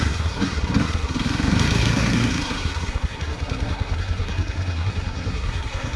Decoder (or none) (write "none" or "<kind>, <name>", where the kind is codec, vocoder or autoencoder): codec, SNAC